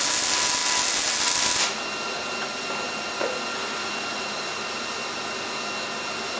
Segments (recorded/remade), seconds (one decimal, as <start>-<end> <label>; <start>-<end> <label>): 0.0-6.4 recorded